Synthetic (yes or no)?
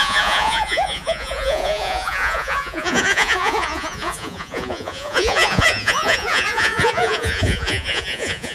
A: yes